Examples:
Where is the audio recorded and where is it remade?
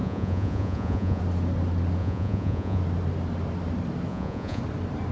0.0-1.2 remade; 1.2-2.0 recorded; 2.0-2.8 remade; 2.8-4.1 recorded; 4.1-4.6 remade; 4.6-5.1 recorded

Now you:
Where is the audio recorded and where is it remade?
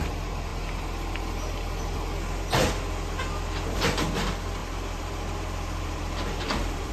0.0-4.6 recorded; 4.6-6.9 remade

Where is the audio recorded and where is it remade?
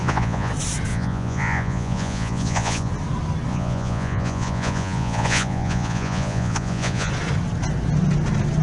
0.0-0.5 remade; 0.5-0.9 recorded; 0.9-2.9 remade; 2.9-3.5 recorded; 3.5-7.1 remade; 7.1-8.6 recorded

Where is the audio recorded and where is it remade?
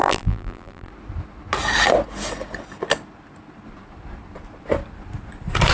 0.0-0.9 remade; 0.9-5.7 recorded